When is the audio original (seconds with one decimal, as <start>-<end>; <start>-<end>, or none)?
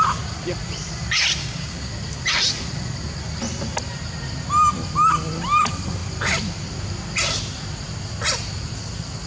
0.0-1.4; 1.9-9.3